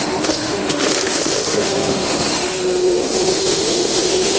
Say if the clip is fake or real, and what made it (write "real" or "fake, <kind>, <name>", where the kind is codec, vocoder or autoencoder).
fake, autoencoder, DAC-VAE